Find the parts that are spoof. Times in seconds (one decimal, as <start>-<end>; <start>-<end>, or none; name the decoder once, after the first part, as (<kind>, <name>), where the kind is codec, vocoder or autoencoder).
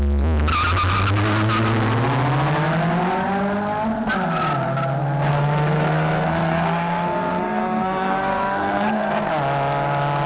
5.3-9.3 (codec, SNAC)